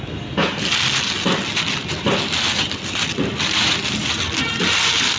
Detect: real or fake real